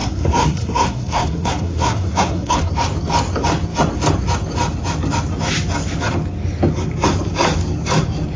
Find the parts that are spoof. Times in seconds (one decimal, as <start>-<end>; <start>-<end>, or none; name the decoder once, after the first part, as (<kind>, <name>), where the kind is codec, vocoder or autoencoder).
0.0-2.7 (codec, SNAC)

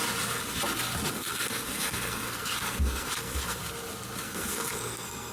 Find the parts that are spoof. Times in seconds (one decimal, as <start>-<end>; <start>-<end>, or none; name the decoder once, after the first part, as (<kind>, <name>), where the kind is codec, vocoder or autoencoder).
1.1-3.6 (codec, SNAC); 4.2-5.3

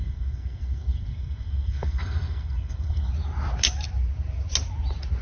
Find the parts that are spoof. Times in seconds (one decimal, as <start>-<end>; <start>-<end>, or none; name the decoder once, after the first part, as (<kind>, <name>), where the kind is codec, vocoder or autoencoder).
0.0-3.1 (codec, SNAC)